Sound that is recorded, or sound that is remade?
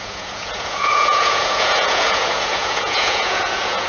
remade